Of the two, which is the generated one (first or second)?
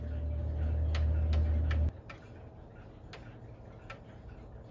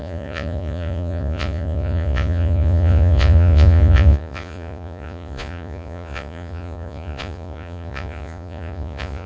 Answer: second